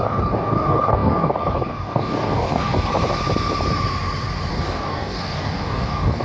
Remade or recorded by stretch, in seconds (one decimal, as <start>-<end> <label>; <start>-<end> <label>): 0.0-2.9 remade; 2.9-4.5 recorded; 4.5-6.2 remade